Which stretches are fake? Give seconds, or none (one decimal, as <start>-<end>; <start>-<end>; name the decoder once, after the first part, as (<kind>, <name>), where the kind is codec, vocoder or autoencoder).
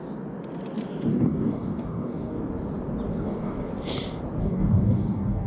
1.1-2.4 (codec, DAC); 3.1-3.7; 4.4-5.5